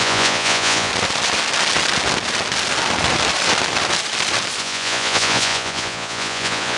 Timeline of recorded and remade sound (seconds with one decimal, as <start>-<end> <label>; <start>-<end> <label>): 0.0-0.9 remade; 0.9-4.6 recorded; 4.6-6.8 remade